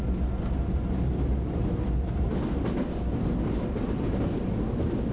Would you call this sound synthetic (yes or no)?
no